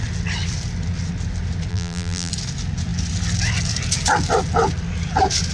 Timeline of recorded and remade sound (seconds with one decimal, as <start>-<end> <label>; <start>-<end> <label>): 0.0-1.7 recorded; 1.7-2.3 remade; 2.3-5.5 recorded

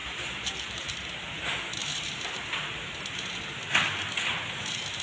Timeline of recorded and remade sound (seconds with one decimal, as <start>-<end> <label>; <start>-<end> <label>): 0.0-1.1 remade; 1.1-1.8 recorded; 1.8-3.3 remade; 3.3-5.0 recorded

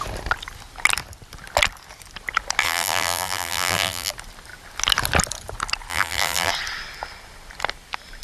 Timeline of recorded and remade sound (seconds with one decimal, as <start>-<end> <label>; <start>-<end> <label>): 0.0-2.6 recorded; 2.6-4.1 remade; 4.1-5.9 recorded; 5.9-6.5 remade; 6.5-8.2 recorded

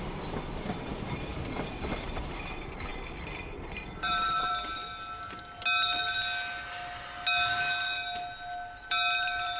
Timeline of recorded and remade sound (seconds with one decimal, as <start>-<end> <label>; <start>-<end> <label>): 0.0-1.3 remade; 1.3-1.9 recorded; 1.9-4.8 remade; 4.8-9.2 recorded; 9.2-9.6 remade

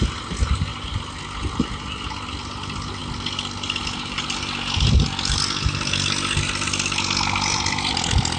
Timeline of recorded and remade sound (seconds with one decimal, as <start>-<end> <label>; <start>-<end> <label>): 0.0-8.4 recorded

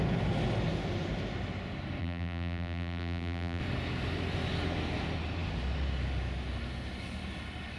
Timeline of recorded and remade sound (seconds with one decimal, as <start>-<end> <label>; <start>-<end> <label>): 0.0-2.0 recorded; 2.0-3.6 remade; 3.6-7.8 recorded

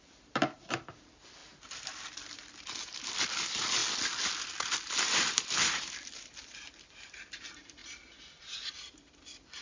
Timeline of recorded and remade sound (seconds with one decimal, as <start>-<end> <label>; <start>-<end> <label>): 0.0-3.8 remade; 3.8-4.9 recorded; 4.9-7.8 remade; 7.8-8.4 recorded; 8.4-9.6 remade